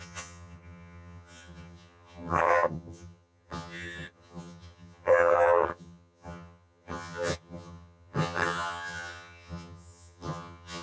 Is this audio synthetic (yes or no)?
yes